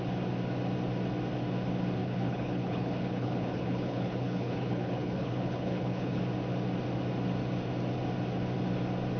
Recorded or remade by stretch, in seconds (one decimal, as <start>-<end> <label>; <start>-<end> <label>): 0.0-2.0 recorded; 2.0-6.2 remade; 6.2-9.2 recorded

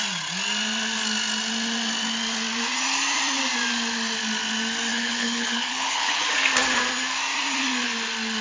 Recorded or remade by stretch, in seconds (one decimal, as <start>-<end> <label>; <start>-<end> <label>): 0.0-4.9 recorded; 4.9-6.2 remade; 6.2-8.4 recorded

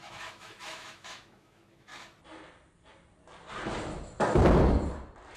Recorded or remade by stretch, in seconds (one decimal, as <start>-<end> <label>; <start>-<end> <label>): 0.0-1.9 remade; 1.9-5.4 recorded

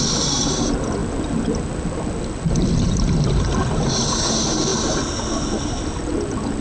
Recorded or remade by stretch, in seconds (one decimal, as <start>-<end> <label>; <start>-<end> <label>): 0.0-6.6 recorded

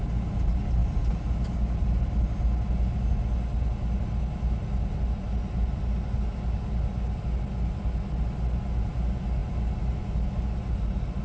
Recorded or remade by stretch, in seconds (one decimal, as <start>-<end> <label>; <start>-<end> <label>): 0.0-11.2 recorded

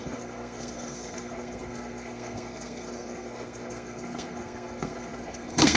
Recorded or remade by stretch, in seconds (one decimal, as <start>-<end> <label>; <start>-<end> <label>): 0.0-5.8 remade